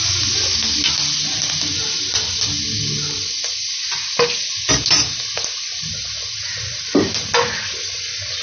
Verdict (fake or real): real